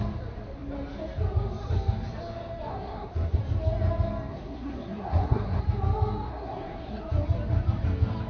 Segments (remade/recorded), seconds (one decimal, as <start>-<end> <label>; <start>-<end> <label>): 0.0-2.7 recorded; 2.7-3.4 remade; 3.4-4.3 recorded; 4.3-5.6 remade; 5.6-6.3 recorded; 6.3-7.0 remade; 7.0-8.3 recorded